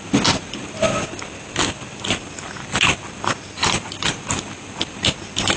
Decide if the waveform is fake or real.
real